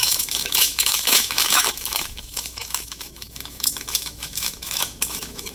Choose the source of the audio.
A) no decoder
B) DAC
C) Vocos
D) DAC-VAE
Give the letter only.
D